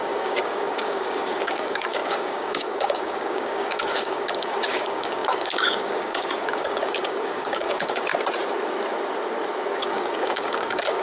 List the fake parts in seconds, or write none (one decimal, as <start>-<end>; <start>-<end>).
0.0-8.1; 9.8-11.0